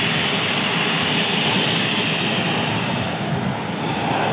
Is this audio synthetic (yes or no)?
no